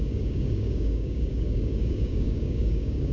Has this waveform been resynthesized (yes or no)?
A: yes